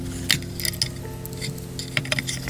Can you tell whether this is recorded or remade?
recorded